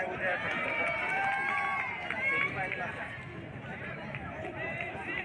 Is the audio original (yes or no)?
no